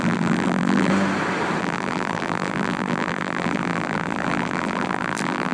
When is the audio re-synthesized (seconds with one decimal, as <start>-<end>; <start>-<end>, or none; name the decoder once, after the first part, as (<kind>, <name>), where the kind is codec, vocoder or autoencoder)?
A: 0.0-0.9 (vocoder, BigVGAN v2); 1.6-5.5